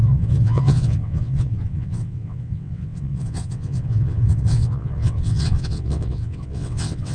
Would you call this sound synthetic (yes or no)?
yes